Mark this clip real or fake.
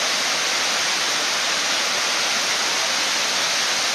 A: real